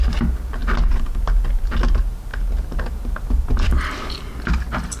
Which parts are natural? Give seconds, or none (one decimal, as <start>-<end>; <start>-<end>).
0.0-5.0